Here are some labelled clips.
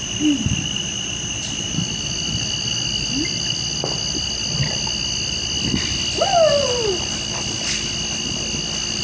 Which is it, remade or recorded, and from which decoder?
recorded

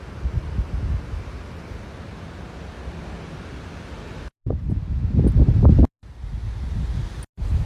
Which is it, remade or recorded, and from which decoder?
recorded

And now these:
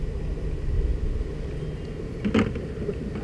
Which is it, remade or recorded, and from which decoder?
recorded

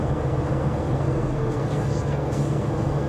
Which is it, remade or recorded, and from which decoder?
remade, codec, SNAC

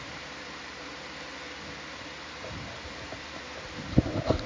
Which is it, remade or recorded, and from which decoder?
recorded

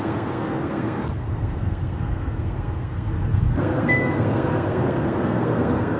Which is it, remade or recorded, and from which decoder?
remade, codec, SNAC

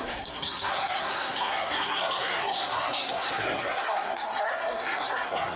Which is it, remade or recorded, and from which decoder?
remade, codec, SNAC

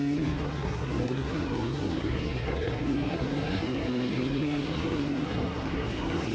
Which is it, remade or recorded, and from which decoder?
remade, codec, SNAC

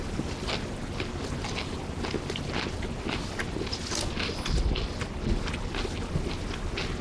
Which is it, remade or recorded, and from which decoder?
recorded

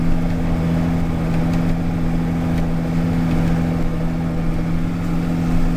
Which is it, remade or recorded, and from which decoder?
recorded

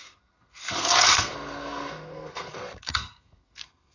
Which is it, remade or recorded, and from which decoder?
remade, codec, SNAC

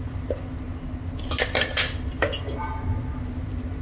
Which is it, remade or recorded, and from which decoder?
recorded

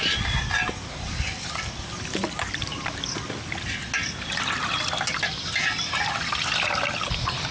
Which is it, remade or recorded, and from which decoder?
recorded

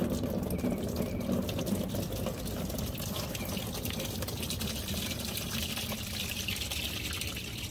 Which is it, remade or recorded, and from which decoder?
recorded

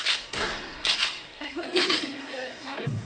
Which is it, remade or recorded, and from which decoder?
remade, codec, SNAC